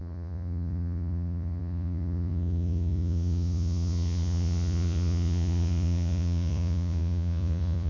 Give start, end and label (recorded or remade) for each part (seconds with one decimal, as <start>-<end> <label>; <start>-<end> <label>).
0.0-7.9 remade